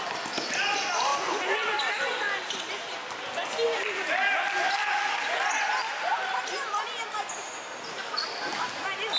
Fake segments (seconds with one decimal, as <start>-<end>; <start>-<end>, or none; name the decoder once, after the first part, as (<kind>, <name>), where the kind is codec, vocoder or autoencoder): none